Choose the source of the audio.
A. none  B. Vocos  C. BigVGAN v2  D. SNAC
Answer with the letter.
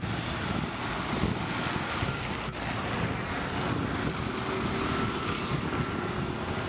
A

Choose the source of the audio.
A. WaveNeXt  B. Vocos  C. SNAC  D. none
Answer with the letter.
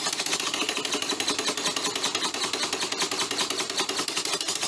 D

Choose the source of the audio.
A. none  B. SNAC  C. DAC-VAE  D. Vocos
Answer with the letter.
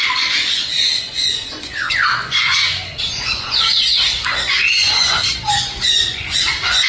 D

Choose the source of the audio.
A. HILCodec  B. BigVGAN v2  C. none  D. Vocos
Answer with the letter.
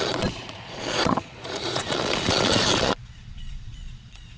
D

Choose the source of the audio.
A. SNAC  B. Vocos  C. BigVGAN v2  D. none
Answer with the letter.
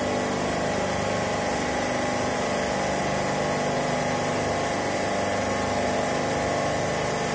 D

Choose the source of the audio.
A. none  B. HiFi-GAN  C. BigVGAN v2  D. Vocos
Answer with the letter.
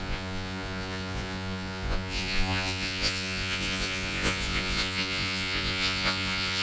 D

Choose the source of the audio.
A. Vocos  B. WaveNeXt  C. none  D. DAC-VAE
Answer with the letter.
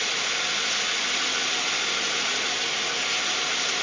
C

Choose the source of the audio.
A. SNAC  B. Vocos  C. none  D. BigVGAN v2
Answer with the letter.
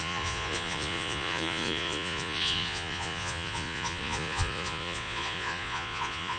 B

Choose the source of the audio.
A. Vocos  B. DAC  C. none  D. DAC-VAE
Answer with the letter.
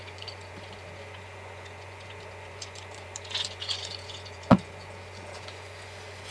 A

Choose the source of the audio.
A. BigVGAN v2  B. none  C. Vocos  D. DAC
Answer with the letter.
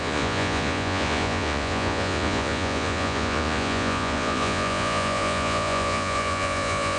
C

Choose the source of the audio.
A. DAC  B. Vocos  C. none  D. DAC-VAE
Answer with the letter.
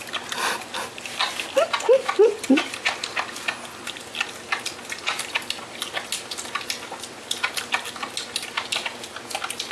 C